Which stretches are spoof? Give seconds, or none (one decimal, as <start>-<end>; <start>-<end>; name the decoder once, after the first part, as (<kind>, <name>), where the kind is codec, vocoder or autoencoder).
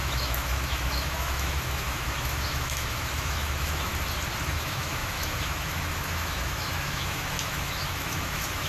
0.0-3.9 (autoencoder, DAC-VAE); 4.5-8.7